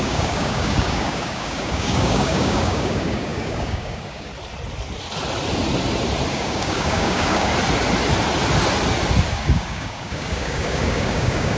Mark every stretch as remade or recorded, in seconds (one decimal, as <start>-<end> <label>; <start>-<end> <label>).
0.0-4.3 remade; 4.3-6.3 recorded; 6.3-7.5 remade; 7.5-9.3 recorded; 9.3-11.6 remade

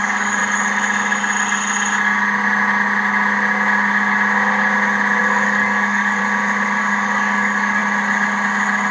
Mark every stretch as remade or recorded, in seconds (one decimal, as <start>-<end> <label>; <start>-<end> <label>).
0.0-0.4 remade; 0.4-5.2 recorded; 5.2-6.2 remade; 6.2-6.8 recorded; 6.8-7.8 remade; 7.8-8.9 recorded